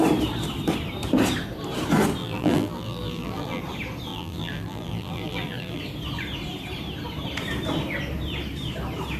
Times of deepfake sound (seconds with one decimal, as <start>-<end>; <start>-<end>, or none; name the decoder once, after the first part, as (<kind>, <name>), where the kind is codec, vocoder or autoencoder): 2.2-3.6 (vocoder, BigVGAN v2); 4.1-5.8